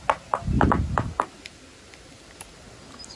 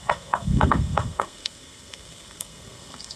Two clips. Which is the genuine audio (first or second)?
first